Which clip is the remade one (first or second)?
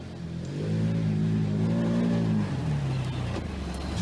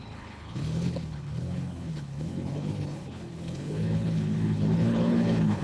second